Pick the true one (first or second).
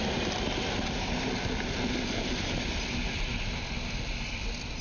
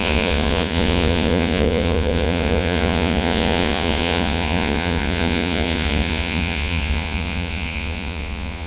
first